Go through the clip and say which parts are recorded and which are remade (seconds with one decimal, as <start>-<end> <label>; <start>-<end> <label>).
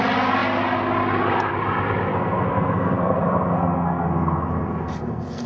0.0-2.1 recorded; 2.1-5.5 remade